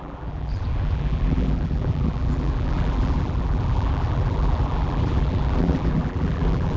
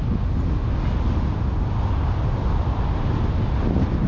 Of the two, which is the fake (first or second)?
first